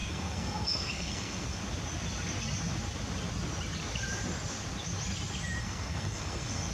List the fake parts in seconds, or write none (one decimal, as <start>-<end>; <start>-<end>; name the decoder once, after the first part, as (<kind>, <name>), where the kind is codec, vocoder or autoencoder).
0.0-1.6 (codec, SNAC); 5.6-6.7